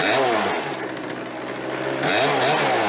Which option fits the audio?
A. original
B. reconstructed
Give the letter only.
A